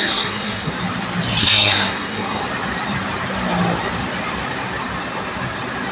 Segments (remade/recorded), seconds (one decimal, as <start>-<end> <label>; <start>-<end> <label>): 0.0-0.7 remade; 0.7-1.4 recorded; 1.4-2.4 remade; 2.4-5.9 recorded